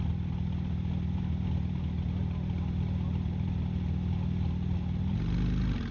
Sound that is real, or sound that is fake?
real